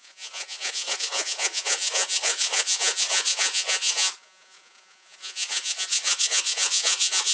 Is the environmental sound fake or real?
fake